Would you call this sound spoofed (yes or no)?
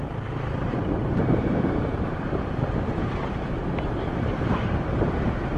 yes